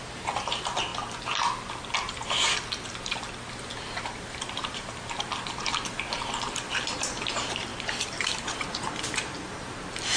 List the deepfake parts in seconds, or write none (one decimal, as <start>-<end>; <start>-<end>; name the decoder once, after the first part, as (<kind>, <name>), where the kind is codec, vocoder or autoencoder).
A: 0.0-0.9 (vocoder, BigVGAN v2); 3.5-10.2